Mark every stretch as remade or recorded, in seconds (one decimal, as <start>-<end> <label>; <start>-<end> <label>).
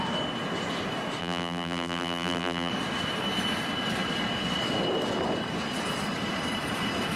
0.0-1.2 recorded; 1.2-2.7 remade; 2.7-7.2 recorded